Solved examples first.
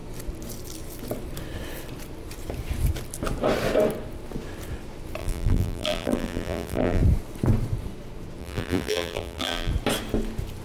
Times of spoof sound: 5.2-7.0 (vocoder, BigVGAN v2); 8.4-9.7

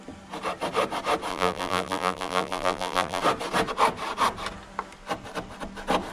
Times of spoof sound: 1.3-3.2 (vocoder, BigVGAN v2)

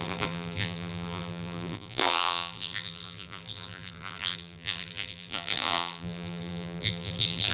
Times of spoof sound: 0.0-7.5 (vocoder, BigVGAN v2)